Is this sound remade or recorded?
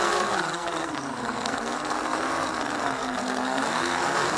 remade